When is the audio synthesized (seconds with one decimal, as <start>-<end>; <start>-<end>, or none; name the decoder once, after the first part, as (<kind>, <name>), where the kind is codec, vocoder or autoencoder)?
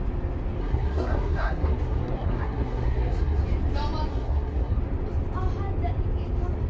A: 0.6-3.4 (codec, SNAC); 4.1-4.8